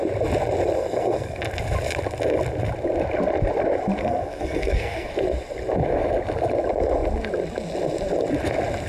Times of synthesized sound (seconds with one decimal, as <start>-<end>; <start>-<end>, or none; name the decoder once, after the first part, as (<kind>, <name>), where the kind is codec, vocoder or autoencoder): 0.8-1.4 (codec, SNAC); 4.0-5.1